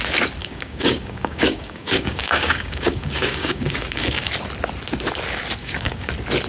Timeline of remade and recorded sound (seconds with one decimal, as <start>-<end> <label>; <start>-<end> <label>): 0.0-0.4 recorded; 0.4-4.3 remade; 4.3-5.6 recorded; 5.6-6.1 remade; 6.1-6.5 recorded

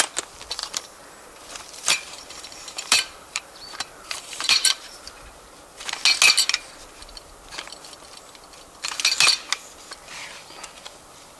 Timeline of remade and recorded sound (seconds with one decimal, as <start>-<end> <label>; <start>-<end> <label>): 0.0-0.6 recorded; 0.6-5.0 remade; 5.0-11.4 recorded